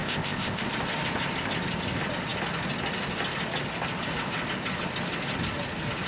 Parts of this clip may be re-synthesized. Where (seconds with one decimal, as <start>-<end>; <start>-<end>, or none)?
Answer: 0.0-0.6